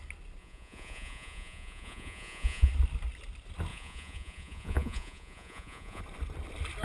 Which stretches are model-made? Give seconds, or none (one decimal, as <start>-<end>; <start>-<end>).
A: 0.4-2.7; 3.7-6.0